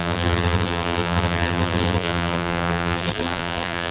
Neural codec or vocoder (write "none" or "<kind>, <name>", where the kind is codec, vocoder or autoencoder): vocoder, BigVGAN v2